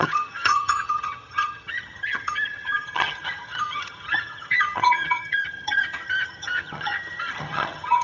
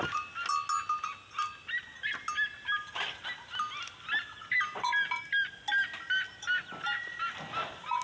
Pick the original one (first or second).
second